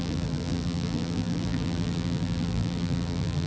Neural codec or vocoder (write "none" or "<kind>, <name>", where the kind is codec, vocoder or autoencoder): vocoder, BigVGAN v2